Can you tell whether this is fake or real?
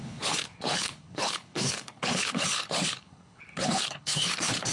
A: fake